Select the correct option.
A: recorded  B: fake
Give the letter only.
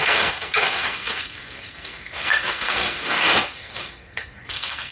B